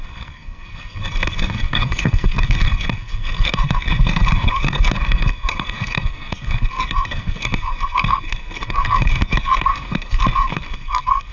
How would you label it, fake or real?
fake